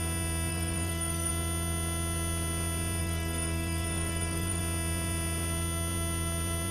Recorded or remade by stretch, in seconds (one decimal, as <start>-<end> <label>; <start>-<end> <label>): 0.0-0.5 recorded; 0.5-1.3 remade; 1.3-3.0 recorded; 3.0-4.6 remade; 4.6-6.7 recorded

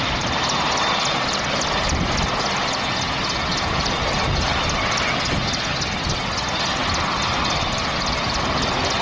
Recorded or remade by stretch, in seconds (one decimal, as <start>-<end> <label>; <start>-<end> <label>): 0.0-9.0 recorded

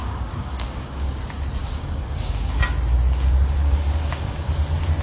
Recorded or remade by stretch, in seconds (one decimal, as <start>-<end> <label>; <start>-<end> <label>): 0.0-1.2 remade; 1.2-1.6 recorded; 1.6-2.6 remade; 2.6-3.6 recorded; 3.6-4.5 remade; 4.5-5.0 recorded

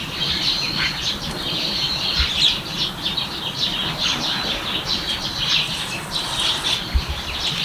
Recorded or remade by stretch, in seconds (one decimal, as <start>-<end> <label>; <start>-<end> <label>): 0.0-7.6 recorded

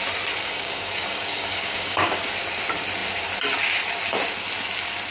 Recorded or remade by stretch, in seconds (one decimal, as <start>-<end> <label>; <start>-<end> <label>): 0.0-0.4 recorded; 0.4-2.3 remade; 2.3-5.1 recorded

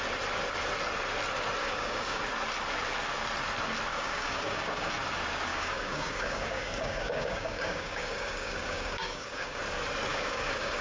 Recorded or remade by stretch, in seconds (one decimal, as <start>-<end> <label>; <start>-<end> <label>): 0.0-1.6 recorded; 1.6-2.2 remade; 2.2-3.9 recorded; 3.9-4.9 remade; 4.9-5.5 recorded; 5.5-9.6 remade; 9.6-10.1 recorded; 10.1-10.8 remade